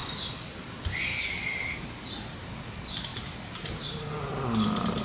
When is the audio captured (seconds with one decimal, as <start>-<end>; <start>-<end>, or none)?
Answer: 0.0-3.1; 4.2-5.0